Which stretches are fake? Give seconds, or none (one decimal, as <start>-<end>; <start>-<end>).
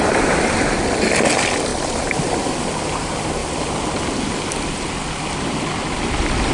none